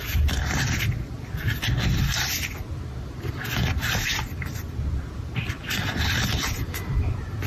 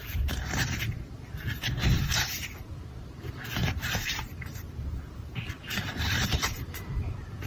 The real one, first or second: first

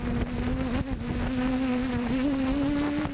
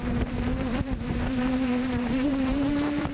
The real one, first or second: first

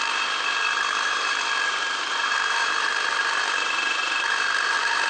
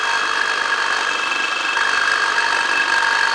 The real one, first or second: second